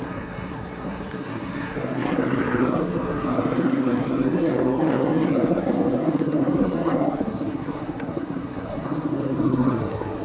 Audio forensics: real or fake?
fake